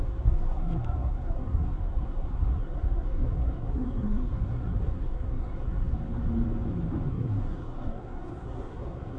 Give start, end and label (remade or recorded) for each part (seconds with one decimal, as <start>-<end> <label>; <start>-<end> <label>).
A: 0.0-6.0 remade; 6.0-7.1 recorded; 7.1-9.2 remade